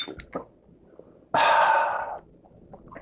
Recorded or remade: recorded